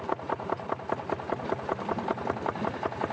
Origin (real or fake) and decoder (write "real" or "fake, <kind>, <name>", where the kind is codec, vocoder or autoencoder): fake, vocoder, BigVGAN v2